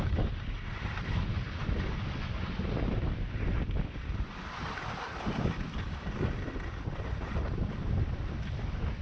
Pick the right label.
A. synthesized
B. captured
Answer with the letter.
B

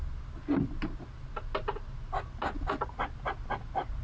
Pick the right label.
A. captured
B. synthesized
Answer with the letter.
A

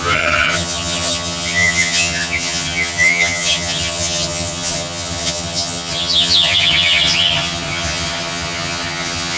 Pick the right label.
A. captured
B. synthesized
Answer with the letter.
B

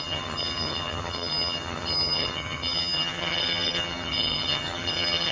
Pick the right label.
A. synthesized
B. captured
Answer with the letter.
A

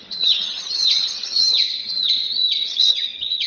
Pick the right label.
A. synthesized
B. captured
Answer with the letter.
A